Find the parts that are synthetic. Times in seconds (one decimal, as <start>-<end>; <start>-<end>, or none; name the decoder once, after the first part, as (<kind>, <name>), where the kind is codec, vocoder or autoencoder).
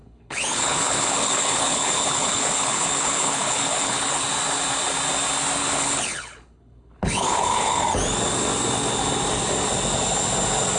0.0-4.2 (codec, HILCodec); 5.6-7.8